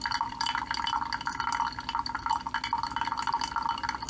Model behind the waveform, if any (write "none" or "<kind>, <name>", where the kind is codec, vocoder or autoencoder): none